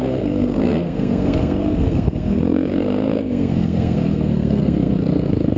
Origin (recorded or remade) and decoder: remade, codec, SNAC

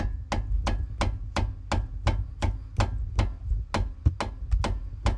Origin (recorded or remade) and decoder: recorded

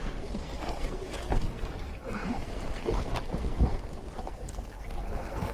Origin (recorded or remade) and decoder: remade, codec, SNAC